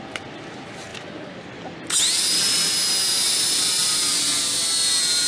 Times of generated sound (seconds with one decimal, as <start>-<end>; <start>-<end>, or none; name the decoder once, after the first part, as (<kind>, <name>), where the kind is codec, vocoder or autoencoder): none